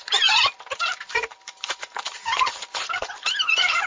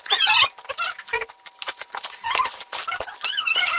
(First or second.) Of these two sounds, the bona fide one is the second